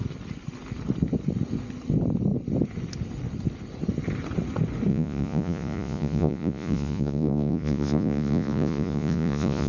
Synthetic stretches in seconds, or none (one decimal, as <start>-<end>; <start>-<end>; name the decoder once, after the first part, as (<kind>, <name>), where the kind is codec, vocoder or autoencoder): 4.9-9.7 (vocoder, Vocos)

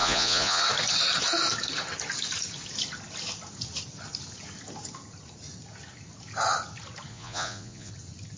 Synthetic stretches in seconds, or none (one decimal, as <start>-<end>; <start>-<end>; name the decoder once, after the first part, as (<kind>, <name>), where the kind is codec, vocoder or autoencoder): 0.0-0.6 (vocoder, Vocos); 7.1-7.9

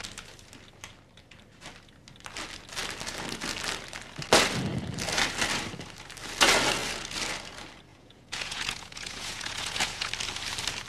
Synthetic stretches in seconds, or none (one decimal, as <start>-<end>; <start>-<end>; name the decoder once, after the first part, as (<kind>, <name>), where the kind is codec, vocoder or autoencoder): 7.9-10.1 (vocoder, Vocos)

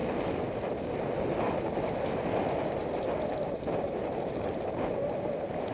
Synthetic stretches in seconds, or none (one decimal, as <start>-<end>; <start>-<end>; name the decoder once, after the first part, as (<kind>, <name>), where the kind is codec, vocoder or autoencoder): none

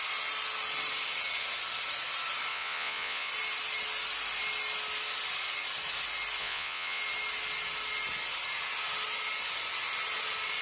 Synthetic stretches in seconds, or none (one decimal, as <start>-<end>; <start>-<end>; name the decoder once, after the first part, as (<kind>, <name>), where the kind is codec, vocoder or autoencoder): 2.5-3.3 (vocoder, Vocos); 6.4-7.0

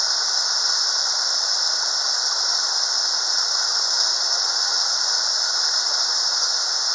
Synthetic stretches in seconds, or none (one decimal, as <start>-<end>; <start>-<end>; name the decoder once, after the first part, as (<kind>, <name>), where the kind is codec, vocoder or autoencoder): 3.0-6.9 (vocoder, Vocos)

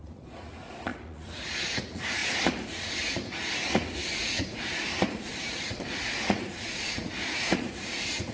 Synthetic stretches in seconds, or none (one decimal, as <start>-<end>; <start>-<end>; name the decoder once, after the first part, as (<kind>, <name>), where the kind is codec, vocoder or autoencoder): 0.0-8.3 (vocoder, Vocos)

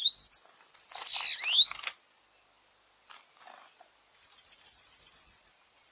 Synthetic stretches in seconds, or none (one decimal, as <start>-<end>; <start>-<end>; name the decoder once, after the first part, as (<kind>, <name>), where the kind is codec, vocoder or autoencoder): 4.1-5.9 (vocoder, Vocos)